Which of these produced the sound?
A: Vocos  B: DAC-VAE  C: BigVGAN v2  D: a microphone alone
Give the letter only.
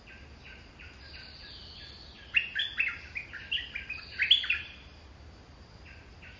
D